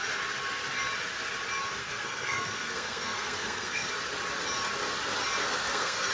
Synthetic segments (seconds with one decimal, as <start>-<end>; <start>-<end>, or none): 1.8-3.9; 5.4-6.1

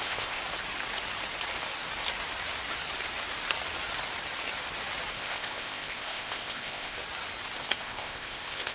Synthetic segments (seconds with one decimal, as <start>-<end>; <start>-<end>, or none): 0.0-0.4; 5.1-7.0; 7.8-8.7